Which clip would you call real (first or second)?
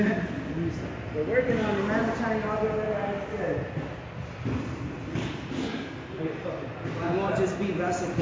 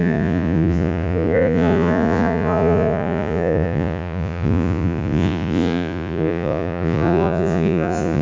first